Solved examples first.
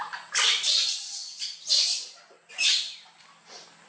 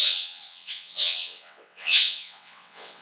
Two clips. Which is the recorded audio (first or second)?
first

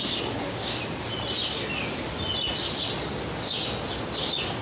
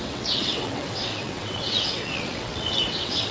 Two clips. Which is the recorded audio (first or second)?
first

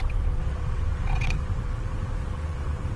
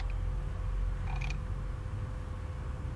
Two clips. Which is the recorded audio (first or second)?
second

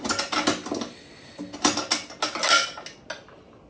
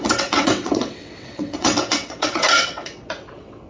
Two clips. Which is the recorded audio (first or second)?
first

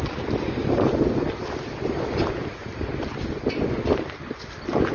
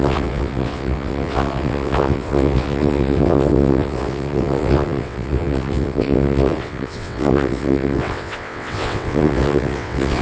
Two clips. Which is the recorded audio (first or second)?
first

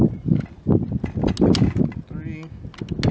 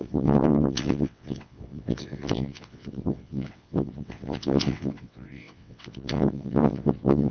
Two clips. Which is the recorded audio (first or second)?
first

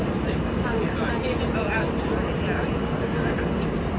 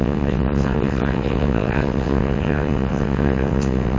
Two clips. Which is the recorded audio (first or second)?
first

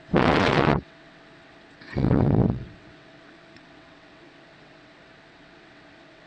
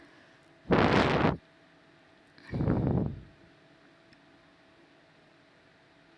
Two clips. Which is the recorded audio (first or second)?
second